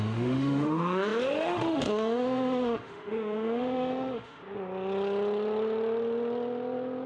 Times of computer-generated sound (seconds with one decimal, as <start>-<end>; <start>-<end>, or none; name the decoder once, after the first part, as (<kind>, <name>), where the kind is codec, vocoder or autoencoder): 0.0-4.4 (autoencoder, DAC-VAE)